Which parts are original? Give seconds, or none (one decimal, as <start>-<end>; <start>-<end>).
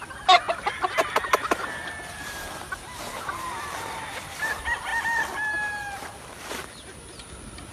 4.9-6.5